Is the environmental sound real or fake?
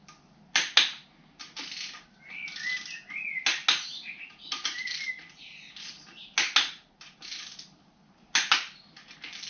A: real